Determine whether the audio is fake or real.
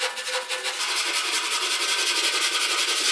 real